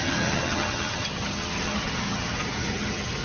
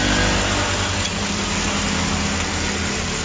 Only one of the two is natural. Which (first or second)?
second